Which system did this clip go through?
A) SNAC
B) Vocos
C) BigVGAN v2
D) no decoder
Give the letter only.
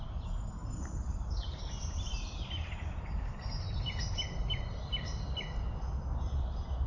D